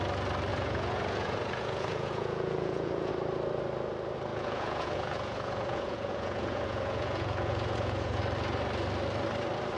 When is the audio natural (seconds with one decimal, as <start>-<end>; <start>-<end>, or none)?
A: 0.0-0.5; 3.1-4.3; 8.2-9.8